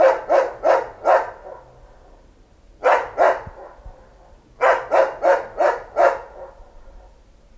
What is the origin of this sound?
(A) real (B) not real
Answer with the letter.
A